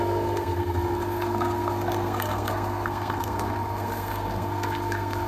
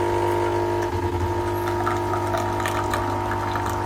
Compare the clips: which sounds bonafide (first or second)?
second